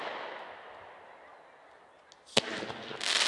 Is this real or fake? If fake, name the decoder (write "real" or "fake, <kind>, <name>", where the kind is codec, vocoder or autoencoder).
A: real